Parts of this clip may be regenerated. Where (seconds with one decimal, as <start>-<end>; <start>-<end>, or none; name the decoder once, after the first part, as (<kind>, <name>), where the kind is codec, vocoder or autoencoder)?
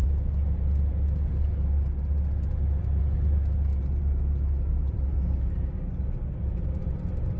none